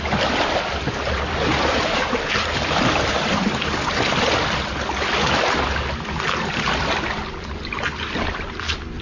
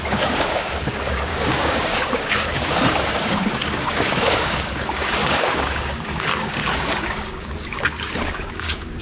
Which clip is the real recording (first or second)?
first